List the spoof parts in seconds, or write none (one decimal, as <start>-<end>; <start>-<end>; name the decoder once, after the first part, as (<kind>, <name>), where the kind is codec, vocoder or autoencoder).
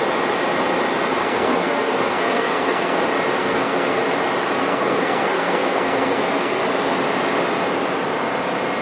1.2-3.0 (codec, SNAC); 3.4-4.0; 4.6-6.6